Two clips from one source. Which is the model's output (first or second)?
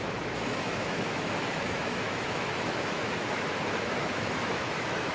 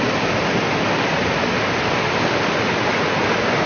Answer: first